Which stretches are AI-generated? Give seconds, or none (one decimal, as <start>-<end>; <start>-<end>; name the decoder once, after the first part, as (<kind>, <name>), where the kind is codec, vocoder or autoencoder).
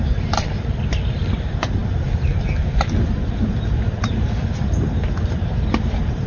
none